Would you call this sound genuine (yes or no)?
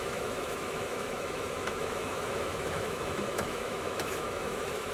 no